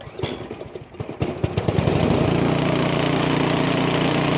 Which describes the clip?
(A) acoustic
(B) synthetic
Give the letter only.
A